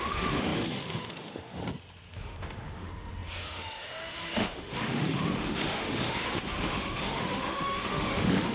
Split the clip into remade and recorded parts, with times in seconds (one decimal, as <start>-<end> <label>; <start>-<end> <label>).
0.0-1.6 remade; 1.6-2.1 recorded; 2.1-8.5 remade